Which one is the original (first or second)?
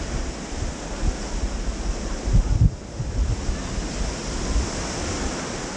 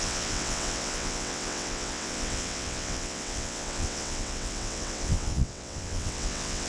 first